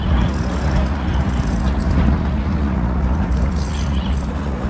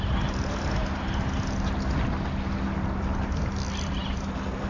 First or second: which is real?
second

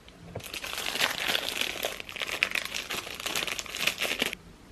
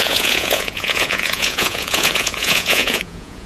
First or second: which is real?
first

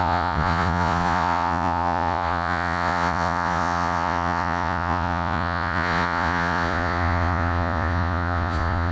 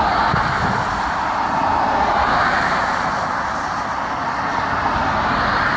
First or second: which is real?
second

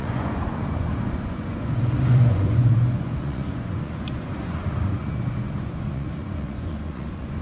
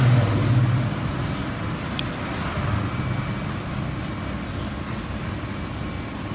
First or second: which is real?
second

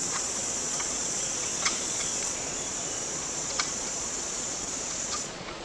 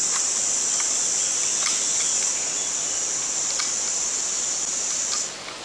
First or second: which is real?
second